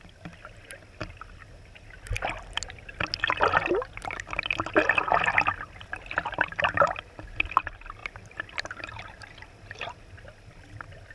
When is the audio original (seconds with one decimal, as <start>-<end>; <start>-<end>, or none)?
0.0-8.0; 9.2-11.1